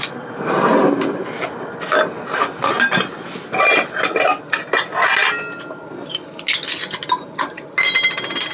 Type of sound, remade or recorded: recorded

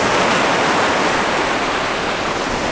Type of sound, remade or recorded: recorded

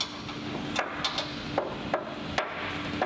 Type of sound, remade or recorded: recorded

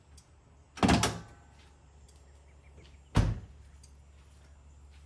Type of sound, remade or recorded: recorded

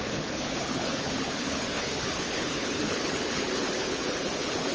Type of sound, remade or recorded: remade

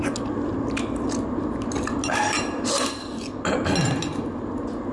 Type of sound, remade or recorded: recorded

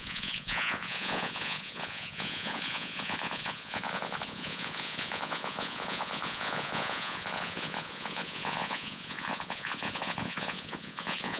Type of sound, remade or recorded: remade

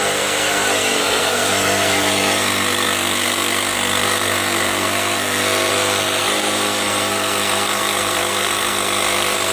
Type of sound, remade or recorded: remade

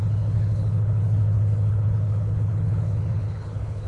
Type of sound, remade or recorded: remade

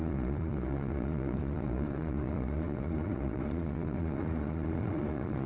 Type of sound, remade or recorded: remade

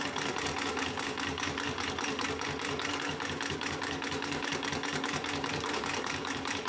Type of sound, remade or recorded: remade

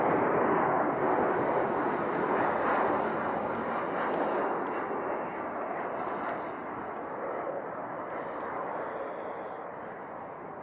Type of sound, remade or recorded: recorded